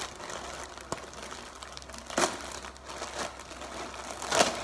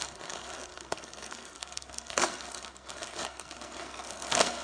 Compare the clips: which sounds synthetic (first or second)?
second